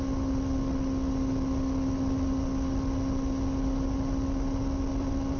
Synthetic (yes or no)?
no